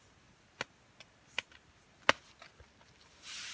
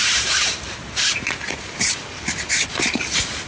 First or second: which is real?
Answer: first